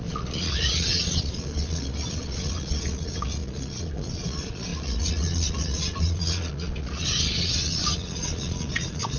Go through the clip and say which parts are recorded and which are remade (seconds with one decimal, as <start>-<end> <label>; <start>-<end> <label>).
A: 0.0-9.2 remade